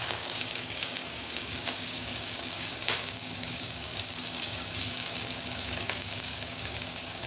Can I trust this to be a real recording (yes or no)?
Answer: no